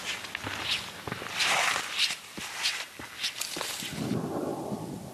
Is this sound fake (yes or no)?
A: no